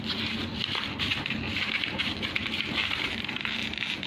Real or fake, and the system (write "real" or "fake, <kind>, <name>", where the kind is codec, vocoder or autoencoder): fake, vocoder, BigVGAN v2